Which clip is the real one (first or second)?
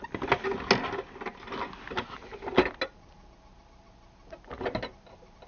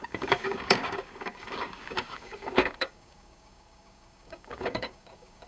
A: first